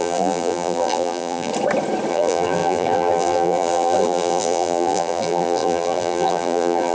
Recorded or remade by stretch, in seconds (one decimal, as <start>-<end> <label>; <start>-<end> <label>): 0.0-1.5 remade; 1.5-2.1 recorded; 2.1-6.9 remade